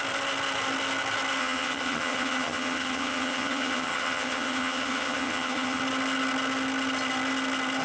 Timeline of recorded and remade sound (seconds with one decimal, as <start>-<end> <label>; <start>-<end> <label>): 0.0-1.4 recorded; 1.4-5.8 remade; 5.8-7.8 recorded